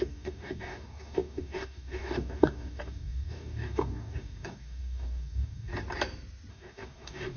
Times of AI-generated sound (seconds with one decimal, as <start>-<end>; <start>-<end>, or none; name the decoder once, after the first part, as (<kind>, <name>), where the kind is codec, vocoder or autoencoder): 0.0-5.7 (codec, DAC); 6.5-7.4